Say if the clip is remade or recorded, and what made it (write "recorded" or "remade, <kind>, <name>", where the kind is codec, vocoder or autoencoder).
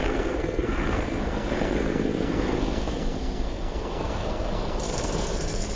remade, codec, SNAC